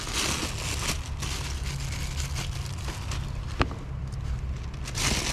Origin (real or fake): real